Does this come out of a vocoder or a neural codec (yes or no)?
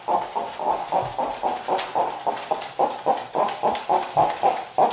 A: no